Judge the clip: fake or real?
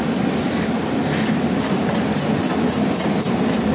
real